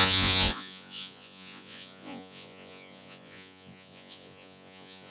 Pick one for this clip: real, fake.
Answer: fake